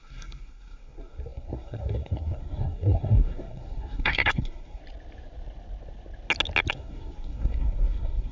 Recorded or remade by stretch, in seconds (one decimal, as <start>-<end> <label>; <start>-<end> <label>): 0.0-4.8 remade; 4.8-6.7 recorded; 6.7-8.3 remade